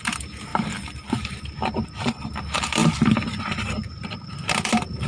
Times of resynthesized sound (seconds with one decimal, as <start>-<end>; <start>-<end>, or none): 0.0-2.8; 3.4-5.1